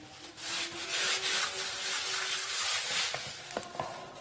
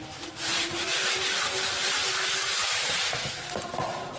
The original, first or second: first